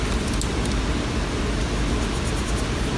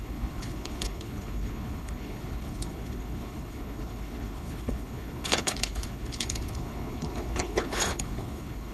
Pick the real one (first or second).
first